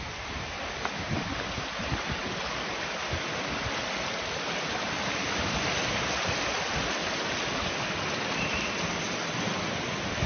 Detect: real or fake real